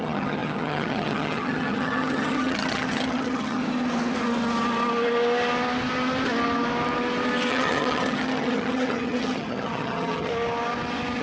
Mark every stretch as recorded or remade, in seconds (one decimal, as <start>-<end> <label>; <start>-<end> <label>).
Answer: 0.0-3.6 remade; 3.6-7.5 recorded; 7.5-10.3 remade; 10.3-11.2 recorded